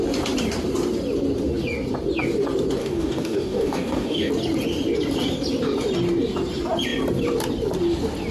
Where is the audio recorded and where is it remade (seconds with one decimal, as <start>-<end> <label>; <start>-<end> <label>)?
0.0-2.8 recorded; 2.8-4.3 remade; 4.3-8.3 recorded